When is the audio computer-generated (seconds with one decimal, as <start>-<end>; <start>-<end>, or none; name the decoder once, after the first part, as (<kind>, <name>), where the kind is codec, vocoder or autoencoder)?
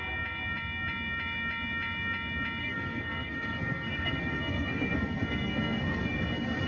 2.6-6.7 (codec, SNAC)